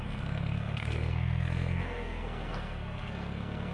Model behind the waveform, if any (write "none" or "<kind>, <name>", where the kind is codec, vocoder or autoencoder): codec, SNAC